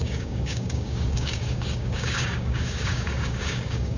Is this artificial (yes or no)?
yes